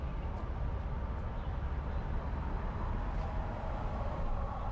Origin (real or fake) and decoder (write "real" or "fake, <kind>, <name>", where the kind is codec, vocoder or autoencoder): real